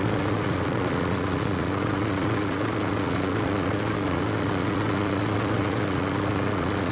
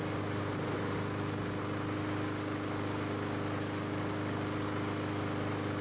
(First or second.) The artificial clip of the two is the first